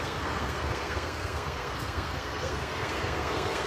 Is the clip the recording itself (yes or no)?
no